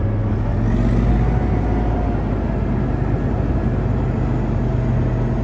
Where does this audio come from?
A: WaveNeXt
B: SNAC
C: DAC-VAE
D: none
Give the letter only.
D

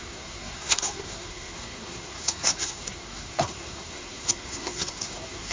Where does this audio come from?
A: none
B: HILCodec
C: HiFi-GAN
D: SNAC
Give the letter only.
D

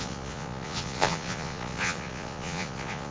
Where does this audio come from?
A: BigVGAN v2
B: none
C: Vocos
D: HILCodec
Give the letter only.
C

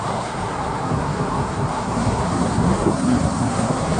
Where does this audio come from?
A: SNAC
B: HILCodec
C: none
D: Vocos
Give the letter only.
A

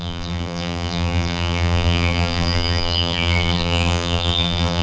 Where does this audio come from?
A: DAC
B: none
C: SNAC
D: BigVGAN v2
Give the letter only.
D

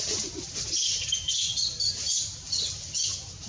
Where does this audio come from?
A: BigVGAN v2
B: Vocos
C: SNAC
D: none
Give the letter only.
D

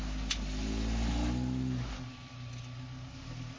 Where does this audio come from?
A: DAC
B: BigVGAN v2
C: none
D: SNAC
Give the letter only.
C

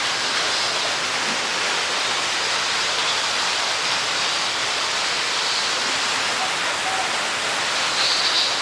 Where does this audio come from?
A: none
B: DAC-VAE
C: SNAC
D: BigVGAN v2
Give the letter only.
A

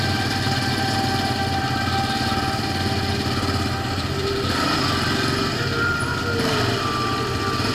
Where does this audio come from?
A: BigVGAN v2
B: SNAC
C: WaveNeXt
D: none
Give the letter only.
D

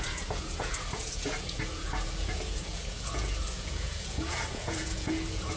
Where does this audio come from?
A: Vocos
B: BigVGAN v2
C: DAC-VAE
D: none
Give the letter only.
A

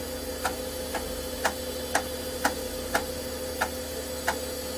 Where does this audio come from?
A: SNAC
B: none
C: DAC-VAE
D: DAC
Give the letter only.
B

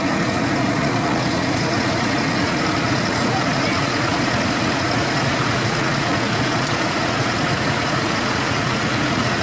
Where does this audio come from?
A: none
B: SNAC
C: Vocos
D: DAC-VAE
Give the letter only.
C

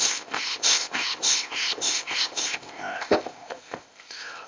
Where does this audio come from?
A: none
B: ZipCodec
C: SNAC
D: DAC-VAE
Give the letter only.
B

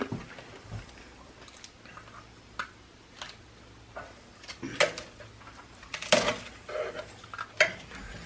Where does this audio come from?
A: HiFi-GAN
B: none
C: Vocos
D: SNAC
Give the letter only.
B